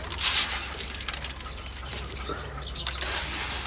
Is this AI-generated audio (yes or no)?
no